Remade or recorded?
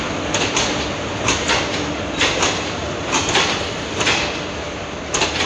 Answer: recorded